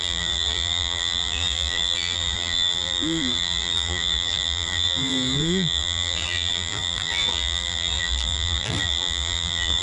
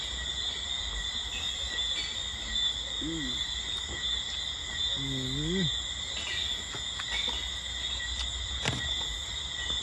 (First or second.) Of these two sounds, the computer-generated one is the first